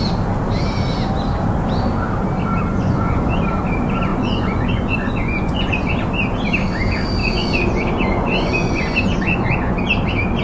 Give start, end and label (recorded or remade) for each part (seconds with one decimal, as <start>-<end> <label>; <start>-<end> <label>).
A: 0.0-2.7 recorded; 2.7-3.4 remade; 3.4-4.1 recorded; 4.1-5.9 remade; 5.9-7.2 recorded; 7.2-9.8 remade; 9.8-10.4 recorded